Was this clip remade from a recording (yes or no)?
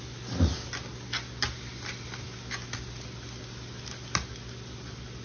no